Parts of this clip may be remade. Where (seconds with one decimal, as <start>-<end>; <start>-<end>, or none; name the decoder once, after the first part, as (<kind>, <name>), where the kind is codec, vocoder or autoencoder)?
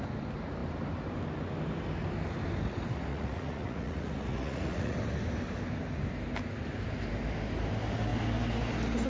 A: 3.1-5.0 (vocoder, Vocos)